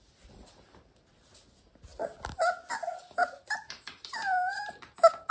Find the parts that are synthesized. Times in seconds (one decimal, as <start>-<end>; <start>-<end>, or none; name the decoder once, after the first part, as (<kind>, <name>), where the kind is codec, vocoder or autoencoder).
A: none